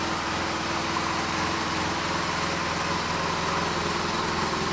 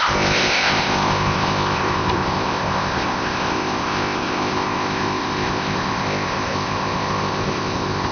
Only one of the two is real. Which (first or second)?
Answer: first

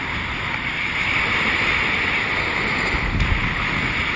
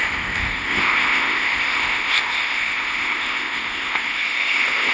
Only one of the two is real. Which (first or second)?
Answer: first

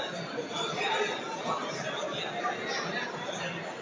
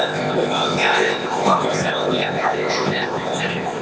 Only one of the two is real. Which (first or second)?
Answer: first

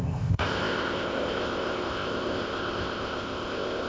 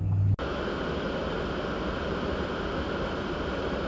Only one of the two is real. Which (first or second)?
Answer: second